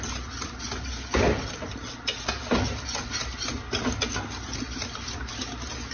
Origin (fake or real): real